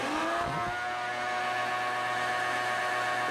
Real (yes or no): yes